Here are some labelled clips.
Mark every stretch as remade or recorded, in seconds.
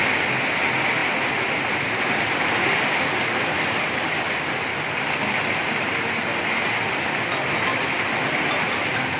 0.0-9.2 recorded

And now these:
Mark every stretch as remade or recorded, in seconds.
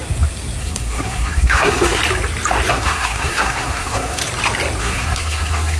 0.0-0.6 recorded; 0.6-2.0 remade; 2.0-2.7 recorded; 2.7-4.2 remade; 4.2-4.8 recorded; 4.8-5.8 remade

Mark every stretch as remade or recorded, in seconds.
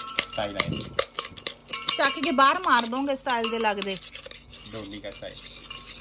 0.0-6.0 recorded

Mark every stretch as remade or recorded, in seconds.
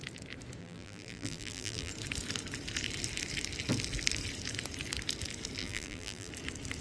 0.0-0.6 recorded; 0.6-1.9 remade; 1.9-5.6 recorded; 5.6-6.3 remade; 6.3-6.8 recorded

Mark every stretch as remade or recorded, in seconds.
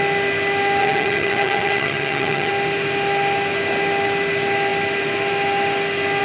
0.0-0.8 recorded; 0.8-2.5 remade; 2.5-6.2 recorded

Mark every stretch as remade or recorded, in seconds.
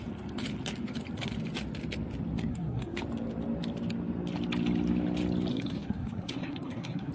0.0-2.5 recorded; 2.5-3.0 remade; 3.0-5.5 recorded; 5.5-7.1 remade